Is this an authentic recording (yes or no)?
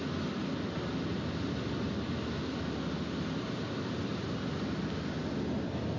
yes